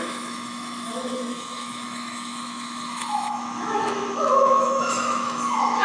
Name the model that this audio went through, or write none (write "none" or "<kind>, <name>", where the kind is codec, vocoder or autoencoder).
autoencoder, DAC-VAE